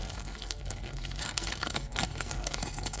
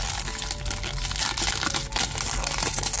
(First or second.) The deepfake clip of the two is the first